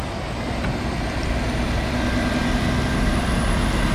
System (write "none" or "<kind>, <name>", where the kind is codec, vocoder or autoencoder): none